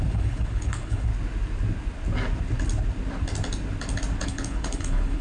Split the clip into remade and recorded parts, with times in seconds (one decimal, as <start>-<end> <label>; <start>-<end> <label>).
0.0-1.1 remade; 1.1-4.2 recorded; 4.2-5.2 remade